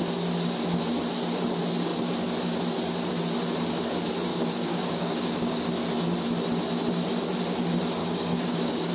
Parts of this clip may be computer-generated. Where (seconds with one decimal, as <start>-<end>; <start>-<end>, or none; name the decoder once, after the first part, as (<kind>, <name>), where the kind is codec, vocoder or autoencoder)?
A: 4.3-5.6 (codec, DAC); 8.0-8.9